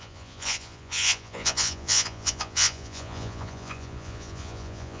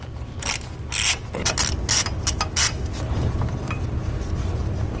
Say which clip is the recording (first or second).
second